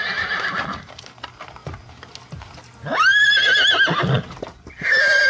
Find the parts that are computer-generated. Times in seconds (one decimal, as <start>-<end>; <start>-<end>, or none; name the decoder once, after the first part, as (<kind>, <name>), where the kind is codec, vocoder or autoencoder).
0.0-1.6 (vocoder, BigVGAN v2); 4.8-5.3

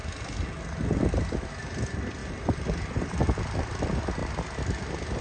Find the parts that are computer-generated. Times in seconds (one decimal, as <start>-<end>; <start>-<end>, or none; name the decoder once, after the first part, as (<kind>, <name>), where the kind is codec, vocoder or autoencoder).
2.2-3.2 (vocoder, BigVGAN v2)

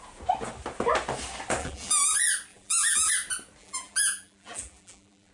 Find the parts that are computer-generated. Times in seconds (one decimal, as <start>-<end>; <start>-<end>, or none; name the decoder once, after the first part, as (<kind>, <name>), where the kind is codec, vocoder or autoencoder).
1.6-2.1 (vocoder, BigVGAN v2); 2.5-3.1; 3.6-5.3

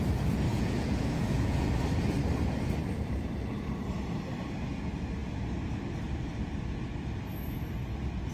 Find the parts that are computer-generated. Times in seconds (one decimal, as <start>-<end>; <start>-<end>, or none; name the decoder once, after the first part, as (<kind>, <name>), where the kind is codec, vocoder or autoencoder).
0.5-1.7 (vocoder, Vocos)